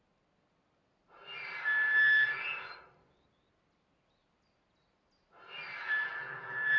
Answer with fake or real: real